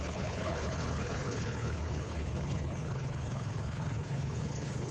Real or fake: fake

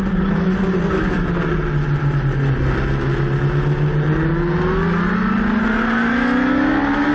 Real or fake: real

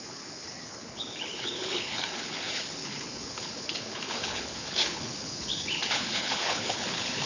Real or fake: fake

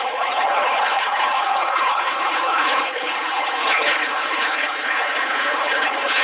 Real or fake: fake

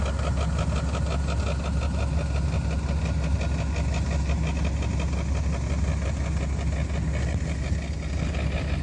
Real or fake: real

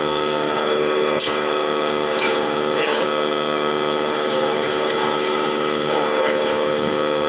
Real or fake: fake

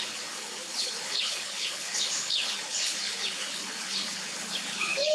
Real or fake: fake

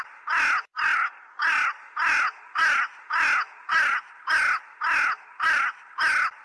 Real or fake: real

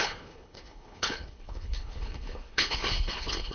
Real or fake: fake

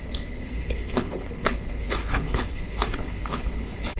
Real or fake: fake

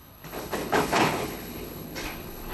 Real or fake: fake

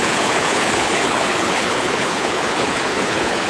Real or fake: fake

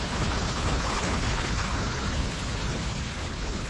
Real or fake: fake